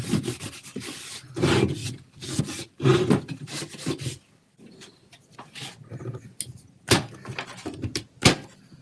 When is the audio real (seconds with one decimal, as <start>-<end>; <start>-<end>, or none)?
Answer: 0.0-8.8